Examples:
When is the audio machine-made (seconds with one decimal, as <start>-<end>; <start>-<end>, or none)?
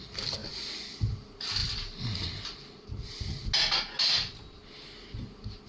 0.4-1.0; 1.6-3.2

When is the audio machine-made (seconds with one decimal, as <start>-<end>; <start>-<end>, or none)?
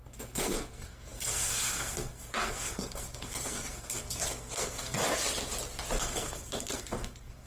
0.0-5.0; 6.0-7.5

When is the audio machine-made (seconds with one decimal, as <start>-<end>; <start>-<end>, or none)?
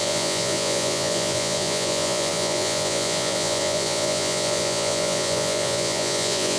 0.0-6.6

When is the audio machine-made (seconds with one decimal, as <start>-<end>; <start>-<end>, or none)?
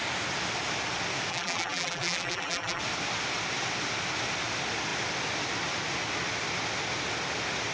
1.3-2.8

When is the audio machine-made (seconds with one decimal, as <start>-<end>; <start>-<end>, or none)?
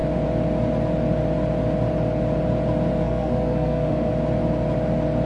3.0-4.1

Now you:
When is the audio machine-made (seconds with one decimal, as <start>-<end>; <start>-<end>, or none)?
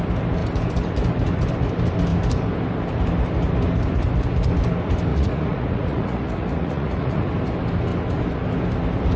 5.1-7.3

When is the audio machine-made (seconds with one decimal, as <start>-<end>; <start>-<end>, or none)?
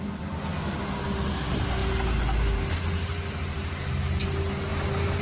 none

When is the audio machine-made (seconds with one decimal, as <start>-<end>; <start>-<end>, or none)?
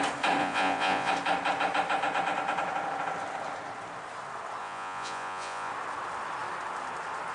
0.4-1.1; 4.6-5.7